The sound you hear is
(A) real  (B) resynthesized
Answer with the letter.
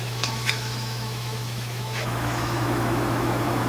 B